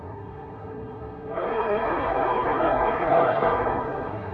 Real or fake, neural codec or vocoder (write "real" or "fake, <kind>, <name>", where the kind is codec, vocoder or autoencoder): fake, codec, SNAC